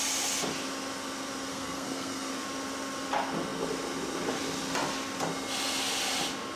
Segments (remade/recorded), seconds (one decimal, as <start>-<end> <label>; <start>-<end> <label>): 0.0-1.5 recorded; 1.5-2.3 remade; 2.3-6.6 recorded